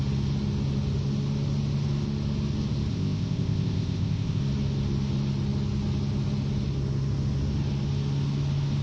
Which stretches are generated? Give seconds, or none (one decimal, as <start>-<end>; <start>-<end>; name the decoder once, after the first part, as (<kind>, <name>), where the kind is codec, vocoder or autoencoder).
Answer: 2.9-4.4 (codec, ZipCodec)